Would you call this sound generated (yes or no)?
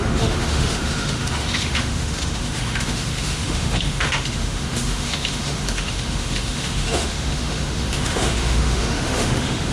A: yes